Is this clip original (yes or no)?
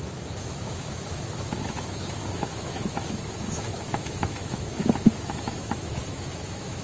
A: no